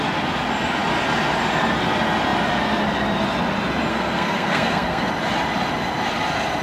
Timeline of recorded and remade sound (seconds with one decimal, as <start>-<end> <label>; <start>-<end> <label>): 0.0-3.9 recorded; 3.9-5.1 remade; 5.1-6.6 recorded